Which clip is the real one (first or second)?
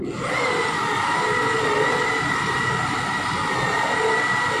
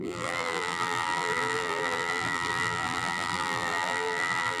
first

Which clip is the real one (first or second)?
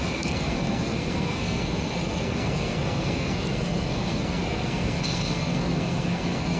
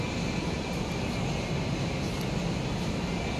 second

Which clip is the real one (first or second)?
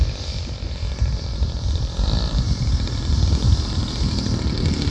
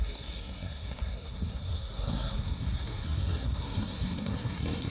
first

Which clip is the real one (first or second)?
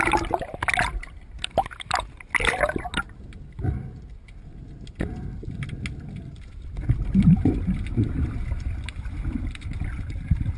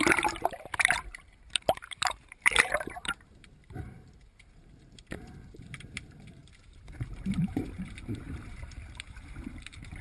first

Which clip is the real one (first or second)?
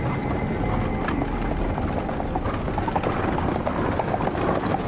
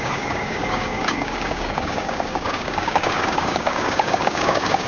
first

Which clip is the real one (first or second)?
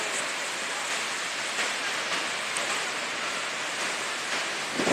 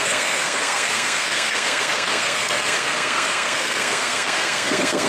first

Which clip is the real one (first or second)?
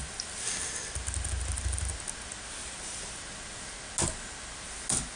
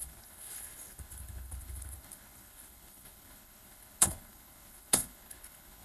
first